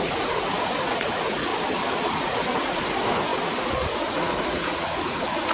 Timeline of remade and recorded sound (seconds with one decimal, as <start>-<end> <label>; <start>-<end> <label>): 0.0-1.5 remade; 1.5-2.0 recorded; 2.0-5.5 remade